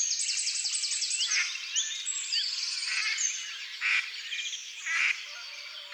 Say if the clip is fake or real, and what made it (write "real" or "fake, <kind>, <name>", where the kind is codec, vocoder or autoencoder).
real